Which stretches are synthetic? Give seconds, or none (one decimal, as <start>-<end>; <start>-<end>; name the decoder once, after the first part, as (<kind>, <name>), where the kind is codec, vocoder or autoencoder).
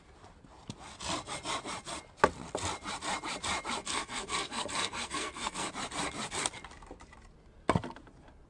3.8-5.7 (codec, SNAC)